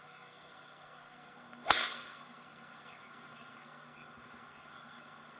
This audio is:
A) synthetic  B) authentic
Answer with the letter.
A